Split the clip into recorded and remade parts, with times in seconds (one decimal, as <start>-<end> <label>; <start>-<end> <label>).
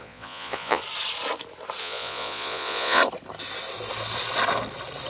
0.0-0.8 remade; 0.8-1.8 recorded; 1.8-3.0 remade; 3.0-5.1 recorded